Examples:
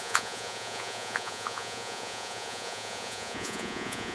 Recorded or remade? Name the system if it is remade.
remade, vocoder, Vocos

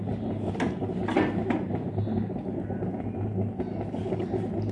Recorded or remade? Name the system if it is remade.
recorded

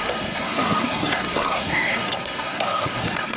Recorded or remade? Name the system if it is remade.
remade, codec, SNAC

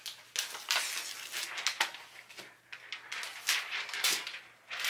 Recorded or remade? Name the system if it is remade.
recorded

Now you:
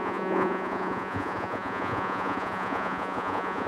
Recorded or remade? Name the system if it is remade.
remade, vocoder, Vocos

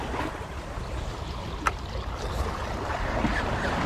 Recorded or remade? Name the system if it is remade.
recorded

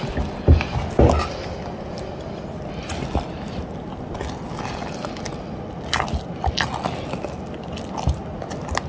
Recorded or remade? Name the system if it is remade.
recorded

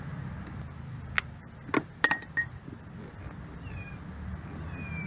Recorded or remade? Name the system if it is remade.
recorded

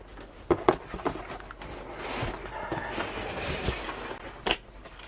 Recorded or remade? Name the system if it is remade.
recorded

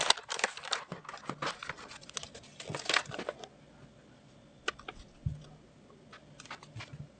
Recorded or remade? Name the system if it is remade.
recorded